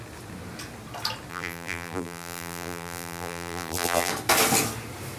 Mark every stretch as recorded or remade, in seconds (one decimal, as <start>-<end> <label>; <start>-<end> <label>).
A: 0.0-1.3 recorded; 1.3-4.1 remade; 4.1-5.2 recorded